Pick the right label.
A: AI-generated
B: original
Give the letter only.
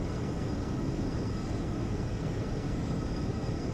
A